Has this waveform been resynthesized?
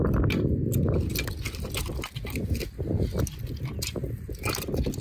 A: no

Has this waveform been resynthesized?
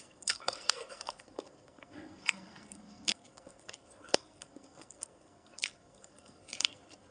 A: yes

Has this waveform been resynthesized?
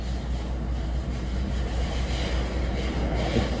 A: no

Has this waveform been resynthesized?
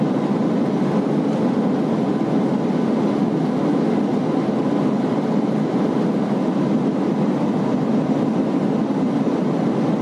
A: no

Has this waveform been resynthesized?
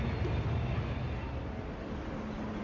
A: no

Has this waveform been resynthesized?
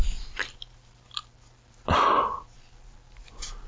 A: no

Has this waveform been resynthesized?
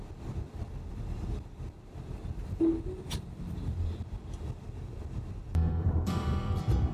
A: yes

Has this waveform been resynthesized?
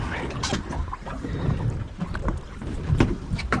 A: yes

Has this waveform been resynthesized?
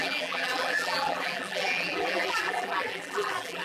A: yes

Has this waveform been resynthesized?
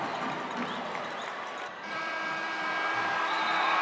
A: yes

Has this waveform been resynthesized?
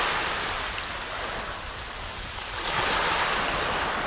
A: no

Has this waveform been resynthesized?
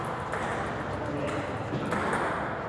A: no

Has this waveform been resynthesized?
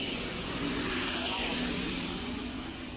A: yes